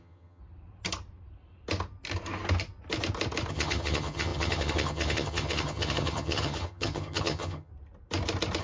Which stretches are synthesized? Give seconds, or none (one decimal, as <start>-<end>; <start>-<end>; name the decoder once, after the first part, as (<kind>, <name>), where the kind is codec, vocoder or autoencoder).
0.0-0.4 (vocoder, HiFi-GAN); 3.5-7.7